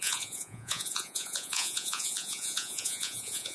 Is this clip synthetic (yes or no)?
yes